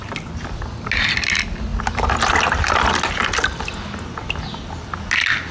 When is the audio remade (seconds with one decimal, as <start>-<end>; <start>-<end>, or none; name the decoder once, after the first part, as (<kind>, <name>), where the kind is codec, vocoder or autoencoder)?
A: 0.0-0.6 (vocoder, BigVGAN v2)